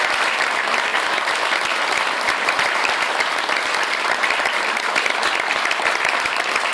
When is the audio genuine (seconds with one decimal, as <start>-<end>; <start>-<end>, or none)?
none